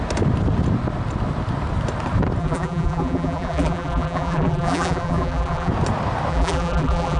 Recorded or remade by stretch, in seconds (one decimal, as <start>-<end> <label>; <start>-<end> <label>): 0.0-2.4 recorded; 2.4-5.7 remade; 5.7-6.3 recorded; 6.3-7.2 remade